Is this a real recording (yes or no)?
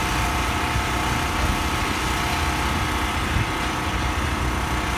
yes